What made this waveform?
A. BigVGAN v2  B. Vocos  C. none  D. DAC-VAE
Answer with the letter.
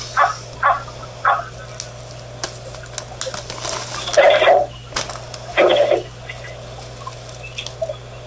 C